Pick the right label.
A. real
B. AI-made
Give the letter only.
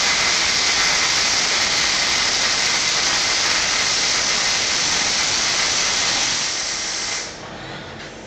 A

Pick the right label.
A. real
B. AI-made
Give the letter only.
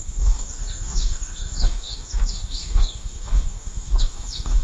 B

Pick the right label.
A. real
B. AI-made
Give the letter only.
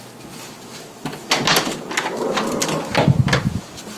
A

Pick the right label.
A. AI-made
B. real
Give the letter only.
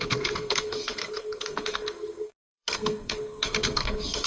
A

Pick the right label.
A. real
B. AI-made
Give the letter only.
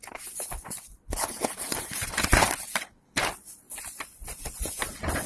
A